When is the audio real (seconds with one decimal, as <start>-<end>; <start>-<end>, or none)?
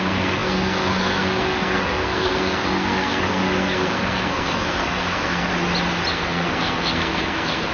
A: 5.5-6.1